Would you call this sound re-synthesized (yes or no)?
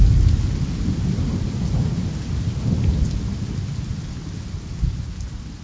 no